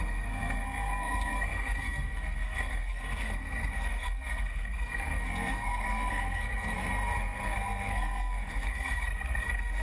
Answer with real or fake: fake